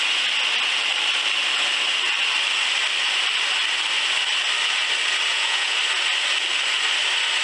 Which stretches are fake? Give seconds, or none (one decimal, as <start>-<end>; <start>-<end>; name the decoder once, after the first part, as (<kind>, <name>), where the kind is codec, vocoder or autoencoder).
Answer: 5.3-5.8 (vocoder, Vocos)